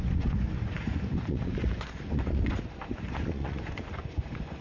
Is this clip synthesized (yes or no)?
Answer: yes